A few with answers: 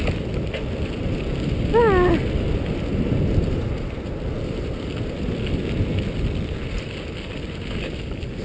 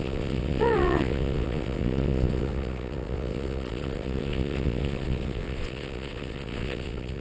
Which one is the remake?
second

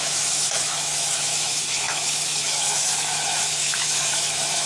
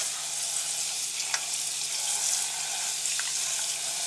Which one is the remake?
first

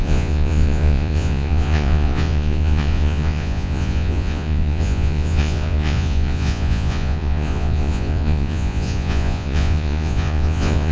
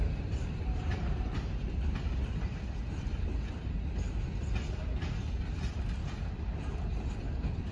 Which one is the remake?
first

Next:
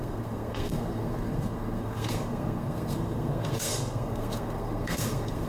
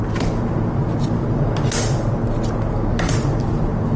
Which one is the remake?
first